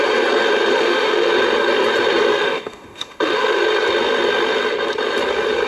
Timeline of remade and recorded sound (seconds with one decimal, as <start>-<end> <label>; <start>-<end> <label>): 0.0-0.7 recorded; 0.7-1.3 remade; 1.3-2.3 recorded; 2.3-3.5 remade; 3.5-5.7 recorded